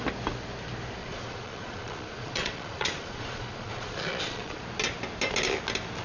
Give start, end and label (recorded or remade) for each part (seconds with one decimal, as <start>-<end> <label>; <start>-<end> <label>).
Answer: 0.0-1.0 recorded; 1.0-4.6 remade; 4.6-6.0 recorded